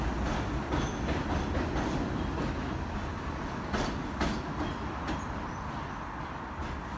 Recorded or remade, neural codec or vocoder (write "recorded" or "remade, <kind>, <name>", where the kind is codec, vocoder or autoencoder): recorded